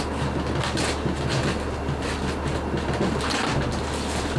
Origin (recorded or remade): recorded